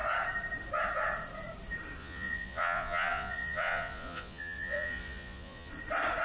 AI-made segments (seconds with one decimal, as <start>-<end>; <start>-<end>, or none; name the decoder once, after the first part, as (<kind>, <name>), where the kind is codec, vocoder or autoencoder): 2.0-5.7 (vocoder, Vocos)